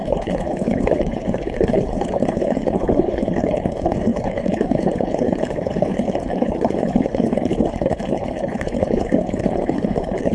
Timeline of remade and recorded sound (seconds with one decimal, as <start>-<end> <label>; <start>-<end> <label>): 0.0-10.3 remade